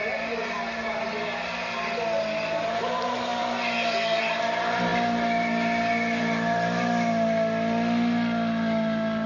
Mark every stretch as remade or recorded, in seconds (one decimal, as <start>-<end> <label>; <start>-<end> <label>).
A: 0.0-9.3 recorded